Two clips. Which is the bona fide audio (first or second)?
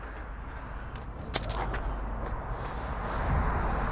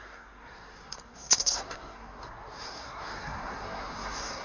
first